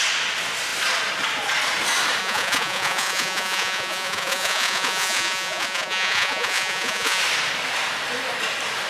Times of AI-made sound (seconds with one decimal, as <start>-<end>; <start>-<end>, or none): 2.2-7.2